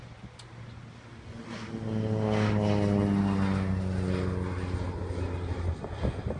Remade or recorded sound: recorded